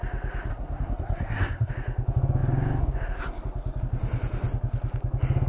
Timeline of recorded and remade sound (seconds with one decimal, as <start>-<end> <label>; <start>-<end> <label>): 0.0-0.5 recorded; 0.5-1.7 remade; 1.7-5.5 recorded